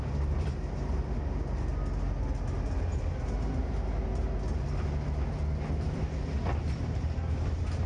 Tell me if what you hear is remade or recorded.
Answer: recorded